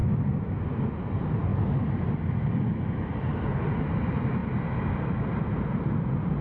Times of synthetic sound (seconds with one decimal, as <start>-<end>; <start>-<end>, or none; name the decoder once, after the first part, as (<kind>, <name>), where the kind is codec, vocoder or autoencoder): none